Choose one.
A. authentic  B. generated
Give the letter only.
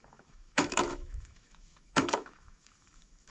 B